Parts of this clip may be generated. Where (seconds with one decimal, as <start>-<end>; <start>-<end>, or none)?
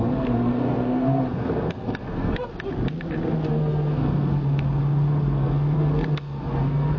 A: 0.0-2.5; 3.5-7.0